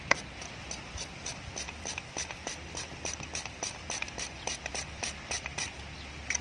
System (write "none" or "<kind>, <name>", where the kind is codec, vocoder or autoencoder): vocoder, BigVGAN v2